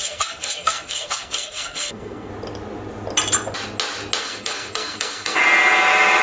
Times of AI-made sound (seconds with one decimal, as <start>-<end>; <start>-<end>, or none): 0.0-2.3; 4.2-5.4